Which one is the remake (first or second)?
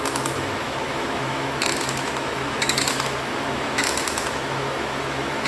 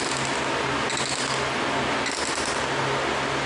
first